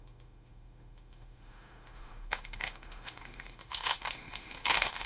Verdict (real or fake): fake